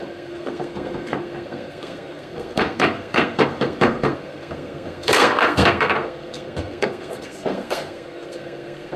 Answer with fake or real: fake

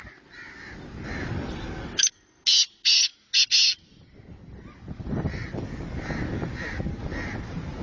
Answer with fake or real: real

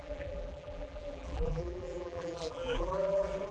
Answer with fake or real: fake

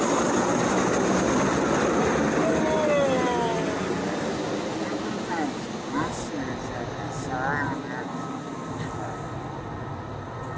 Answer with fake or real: real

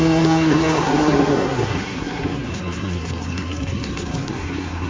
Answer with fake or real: fake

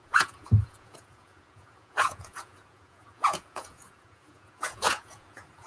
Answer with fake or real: fake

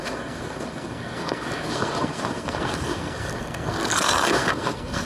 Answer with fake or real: fake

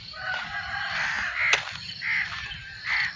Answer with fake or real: real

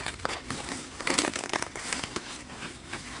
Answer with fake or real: fake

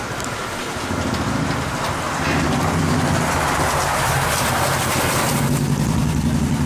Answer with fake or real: real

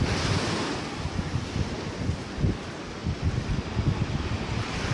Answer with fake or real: real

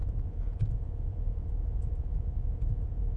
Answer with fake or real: fake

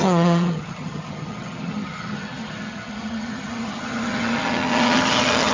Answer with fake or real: fake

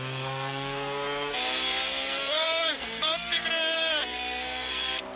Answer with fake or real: fake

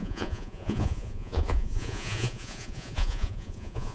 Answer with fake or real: fake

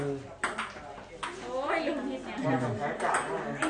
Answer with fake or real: real